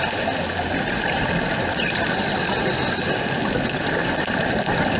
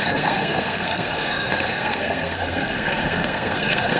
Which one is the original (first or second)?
first